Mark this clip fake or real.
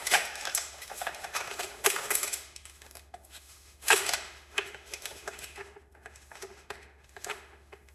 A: fake